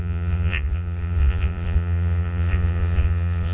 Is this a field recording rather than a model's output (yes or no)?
no